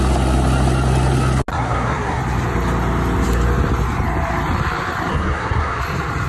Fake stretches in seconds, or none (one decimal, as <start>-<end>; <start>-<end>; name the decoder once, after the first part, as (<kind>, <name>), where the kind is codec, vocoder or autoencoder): 1.5-2.2 (codec, SNAC); 5.1-5.8